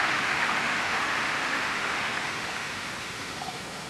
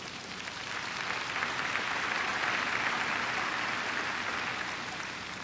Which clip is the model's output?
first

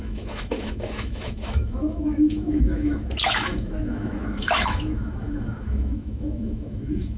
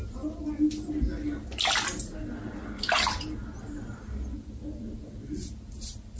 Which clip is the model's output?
first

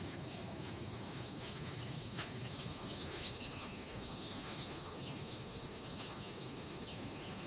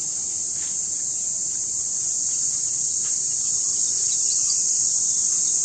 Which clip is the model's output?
first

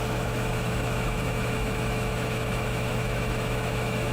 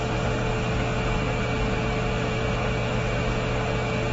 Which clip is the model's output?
first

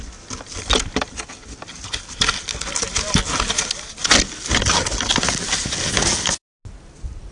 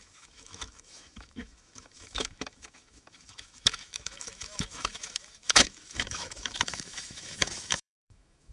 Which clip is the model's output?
second